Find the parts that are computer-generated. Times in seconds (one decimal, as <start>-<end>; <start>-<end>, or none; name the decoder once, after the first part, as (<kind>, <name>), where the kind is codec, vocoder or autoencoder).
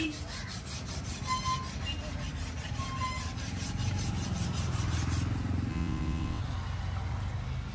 5.7-6.4 (vocoder, WaveNeXt)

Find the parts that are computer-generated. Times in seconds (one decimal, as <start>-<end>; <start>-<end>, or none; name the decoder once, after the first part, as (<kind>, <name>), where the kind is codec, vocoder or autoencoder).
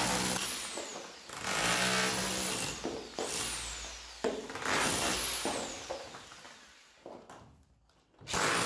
none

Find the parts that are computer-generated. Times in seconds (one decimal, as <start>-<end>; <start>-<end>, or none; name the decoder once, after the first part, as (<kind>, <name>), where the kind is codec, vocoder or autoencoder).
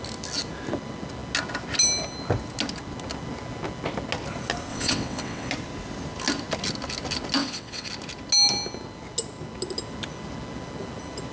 4.7-5.5 (vocoder, WaveNeXt); 7.4-7.9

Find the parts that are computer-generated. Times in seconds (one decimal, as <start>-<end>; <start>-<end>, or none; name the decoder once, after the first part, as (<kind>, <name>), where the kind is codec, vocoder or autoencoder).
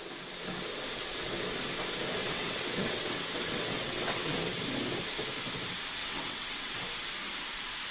2.2-4.6 (vocoder, WaveNeXt); 6.0-6.8